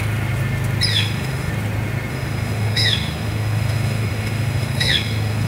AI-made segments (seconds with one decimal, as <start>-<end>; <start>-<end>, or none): 0.9-1.5; 2.1-5.5